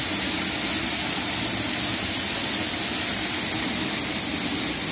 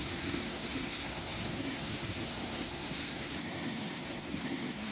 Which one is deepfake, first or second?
second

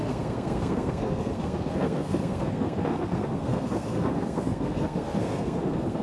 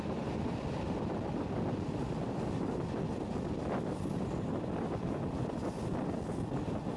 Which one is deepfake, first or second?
first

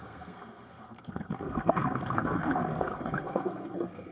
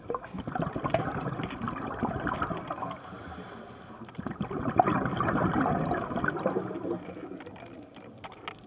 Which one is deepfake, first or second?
first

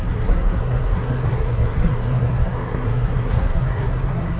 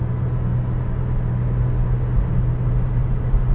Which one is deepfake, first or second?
first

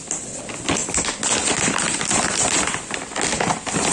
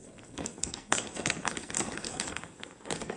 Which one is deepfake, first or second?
second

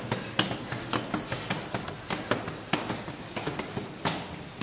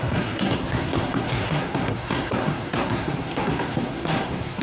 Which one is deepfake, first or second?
second